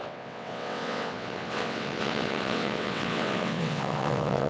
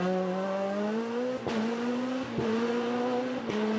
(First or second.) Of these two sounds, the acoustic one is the second